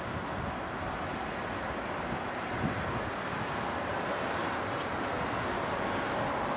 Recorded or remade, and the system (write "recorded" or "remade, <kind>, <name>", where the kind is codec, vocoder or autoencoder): recorded